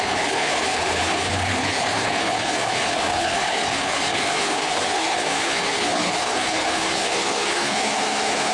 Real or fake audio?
fake